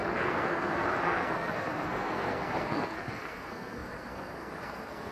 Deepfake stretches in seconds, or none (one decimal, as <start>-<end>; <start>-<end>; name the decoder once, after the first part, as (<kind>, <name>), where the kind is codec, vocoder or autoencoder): 0.0-5.1 (codec, SNAC)